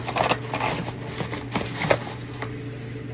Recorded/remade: recorded